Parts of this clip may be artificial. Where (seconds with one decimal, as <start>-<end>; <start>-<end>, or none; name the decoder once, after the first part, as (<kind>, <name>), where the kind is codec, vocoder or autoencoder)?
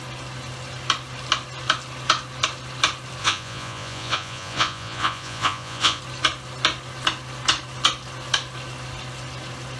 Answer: 3.2-6.0 (vocoder, Vocos)